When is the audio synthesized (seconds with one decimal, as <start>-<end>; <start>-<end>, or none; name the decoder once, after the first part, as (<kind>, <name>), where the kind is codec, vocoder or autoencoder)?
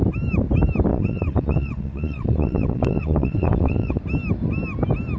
0.9-4.0 (vocoder, WaveNeXt)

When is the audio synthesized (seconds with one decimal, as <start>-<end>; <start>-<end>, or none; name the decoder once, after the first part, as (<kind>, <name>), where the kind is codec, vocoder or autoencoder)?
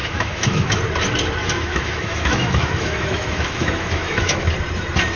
0.0-0.8 (autoencoder, DAC-VAE); 1.4-4.5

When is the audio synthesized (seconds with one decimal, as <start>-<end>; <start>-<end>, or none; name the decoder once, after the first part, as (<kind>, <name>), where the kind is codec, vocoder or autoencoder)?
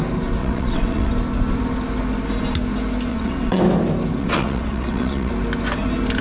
0.4-1.1 (vocoder, WaveNeXt); 3.1-3.6; 4.2-5.3